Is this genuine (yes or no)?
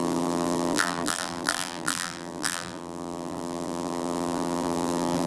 no